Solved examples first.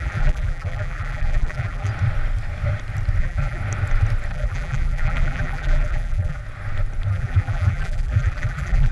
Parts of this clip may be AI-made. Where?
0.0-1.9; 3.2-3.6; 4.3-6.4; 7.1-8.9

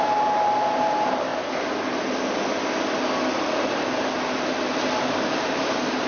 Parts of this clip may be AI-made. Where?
0.0-1.3; 5.0-6.1